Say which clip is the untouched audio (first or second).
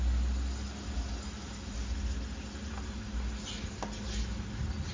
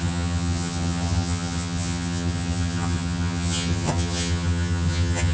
first